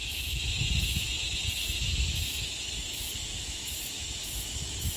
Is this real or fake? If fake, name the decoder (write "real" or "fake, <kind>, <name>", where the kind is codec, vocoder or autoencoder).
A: fake, autoencoder, DAC-VAE